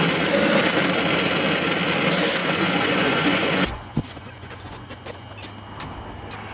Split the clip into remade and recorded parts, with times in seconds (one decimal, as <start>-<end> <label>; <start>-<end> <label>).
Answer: 0.0-2.4 recorded; 2.4-5.3 remade; 5.3-6.5 recorded